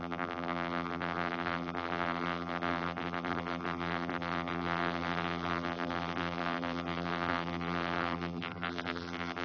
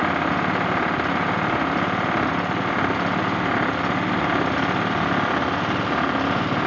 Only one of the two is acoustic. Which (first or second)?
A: second